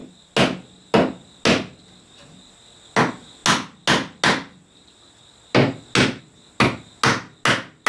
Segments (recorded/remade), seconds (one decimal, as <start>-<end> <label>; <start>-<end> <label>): 0.0-7.9 recorded